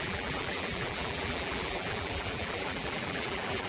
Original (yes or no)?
no